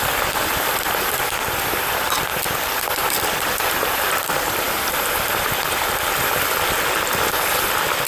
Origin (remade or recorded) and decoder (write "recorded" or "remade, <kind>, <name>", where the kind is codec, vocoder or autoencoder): remade, vocoder, BigVGAN v2